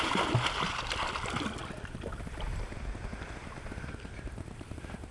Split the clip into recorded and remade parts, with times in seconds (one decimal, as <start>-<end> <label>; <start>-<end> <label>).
0.0-5.1 recorded